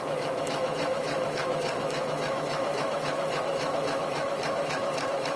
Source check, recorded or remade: remade